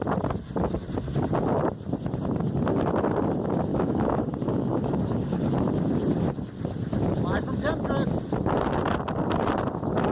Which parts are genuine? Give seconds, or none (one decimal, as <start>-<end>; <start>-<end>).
0.0-3.7; 5.5-10.1